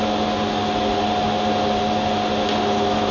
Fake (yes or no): no